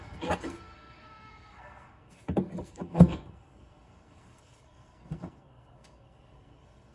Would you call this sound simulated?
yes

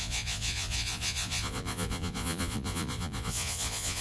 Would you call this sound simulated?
yes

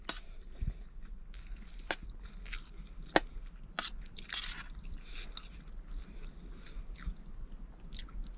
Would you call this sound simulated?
no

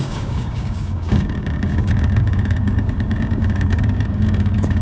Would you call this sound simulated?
yes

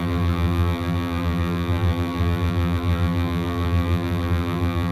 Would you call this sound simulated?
yes